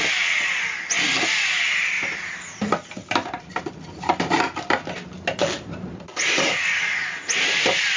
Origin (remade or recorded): recorded